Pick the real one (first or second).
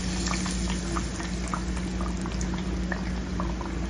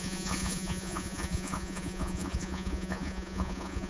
first